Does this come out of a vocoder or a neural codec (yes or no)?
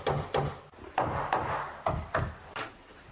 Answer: no